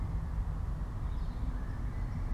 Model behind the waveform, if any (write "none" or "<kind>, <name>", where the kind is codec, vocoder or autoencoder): none